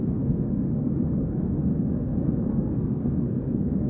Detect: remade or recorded remade